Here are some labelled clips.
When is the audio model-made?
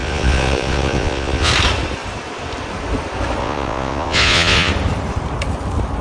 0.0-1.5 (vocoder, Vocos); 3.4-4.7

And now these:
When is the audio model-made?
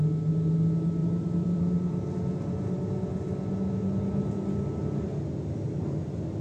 1.0-1.6 (vocoder, BigVGAN v2)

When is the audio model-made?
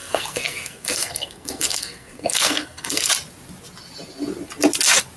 0.0-3.1 (codec, SNAC)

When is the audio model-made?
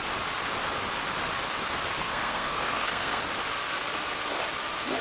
2.0-3.2 (codec, SNAC)